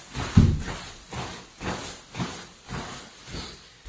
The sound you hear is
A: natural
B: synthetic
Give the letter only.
A